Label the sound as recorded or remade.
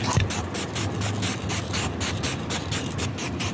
recorded